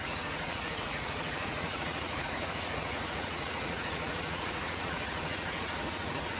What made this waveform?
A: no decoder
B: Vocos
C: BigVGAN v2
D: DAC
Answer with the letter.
B